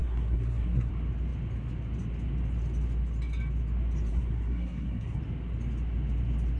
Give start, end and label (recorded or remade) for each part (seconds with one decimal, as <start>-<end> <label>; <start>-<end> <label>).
0.0-0.9 remade; 0.9-4.1 recorded; 4.1-5.2 remade; 5.2-6.6 recorded